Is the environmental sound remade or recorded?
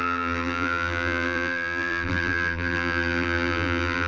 remade